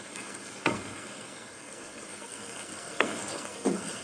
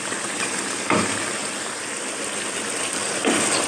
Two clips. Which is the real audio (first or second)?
second